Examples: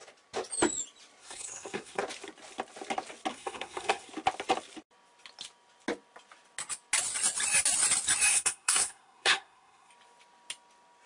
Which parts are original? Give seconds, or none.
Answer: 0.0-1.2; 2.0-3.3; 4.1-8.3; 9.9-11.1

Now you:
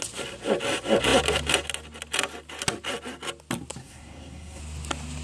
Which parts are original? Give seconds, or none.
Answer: 0.0-3.8; 4.6-5.2